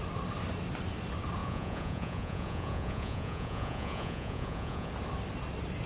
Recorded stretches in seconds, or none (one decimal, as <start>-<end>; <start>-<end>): 0.0-1.4; 4.9-5.9